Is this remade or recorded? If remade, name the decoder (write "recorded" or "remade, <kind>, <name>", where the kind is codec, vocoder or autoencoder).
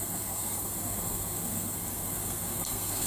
remade, codec, SNAC